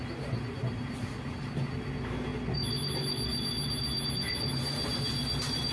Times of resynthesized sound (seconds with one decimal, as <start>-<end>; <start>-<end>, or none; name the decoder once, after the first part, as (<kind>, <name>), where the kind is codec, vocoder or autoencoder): none